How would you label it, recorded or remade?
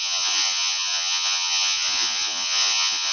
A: remade